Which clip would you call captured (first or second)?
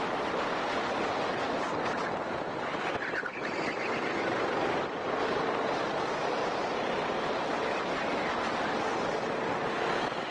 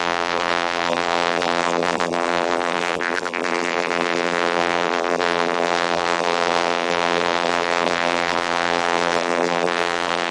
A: first